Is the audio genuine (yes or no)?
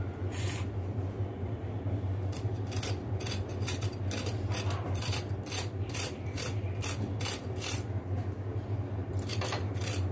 no